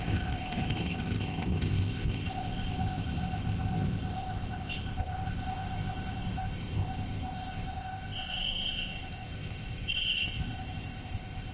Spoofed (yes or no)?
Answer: yes